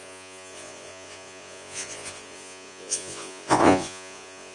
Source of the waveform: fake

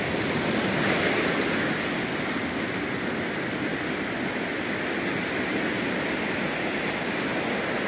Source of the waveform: real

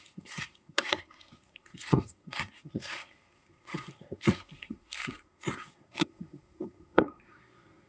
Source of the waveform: fake